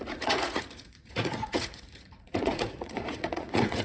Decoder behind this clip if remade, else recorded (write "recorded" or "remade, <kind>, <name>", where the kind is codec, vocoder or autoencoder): remade, vocoder, Vocos